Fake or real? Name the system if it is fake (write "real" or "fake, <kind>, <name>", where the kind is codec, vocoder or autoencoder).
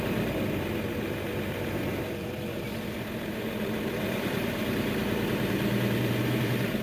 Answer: fake, vocoder, BigVGAN v2